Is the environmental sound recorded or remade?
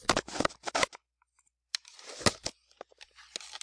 recorded